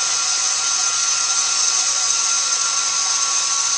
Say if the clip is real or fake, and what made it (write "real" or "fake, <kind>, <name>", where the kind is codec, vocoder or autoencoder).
real